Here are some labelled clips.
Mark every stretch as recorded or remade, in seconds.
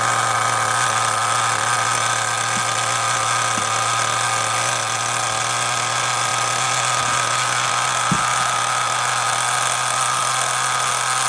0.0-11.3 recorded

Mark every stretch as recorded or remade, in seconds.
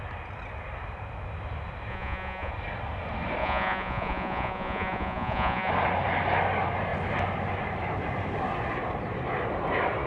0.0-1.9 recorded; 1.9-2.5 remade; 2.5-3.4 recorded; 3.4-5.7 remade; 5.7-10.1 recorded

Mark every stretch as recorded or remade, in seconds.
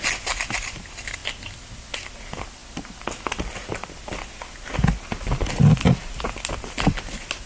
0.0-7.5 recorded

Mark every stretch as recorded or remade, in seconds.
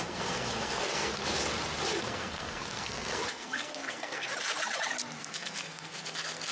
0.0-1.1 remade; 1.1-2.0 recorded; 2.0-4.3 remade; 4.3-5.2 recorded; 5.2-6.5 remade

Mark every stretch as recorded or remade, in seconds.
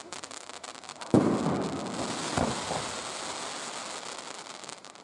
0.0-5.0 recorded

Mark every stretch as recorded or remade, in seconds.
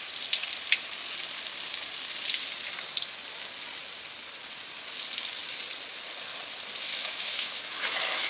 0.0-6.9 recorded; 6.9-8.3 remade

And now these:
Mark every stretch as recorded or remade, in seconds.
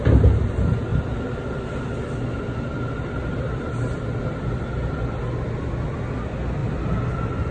0.0-7.5 recorded